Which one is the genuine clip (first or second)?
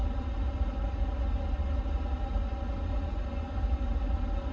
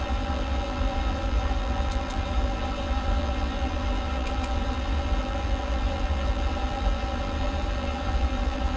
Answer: first